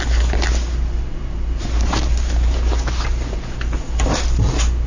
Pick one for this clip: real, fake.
real